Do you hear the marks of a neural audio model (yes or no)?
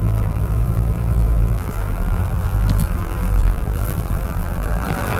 yes